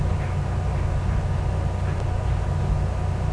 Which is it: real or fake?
real